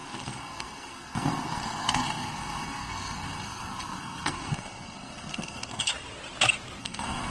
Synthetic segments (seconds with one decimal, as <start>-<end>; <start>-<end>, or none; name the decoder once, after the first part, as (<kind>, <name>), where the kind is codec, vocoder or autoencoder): 0.0-5.9 (codec, SNAC); 6.8-7.3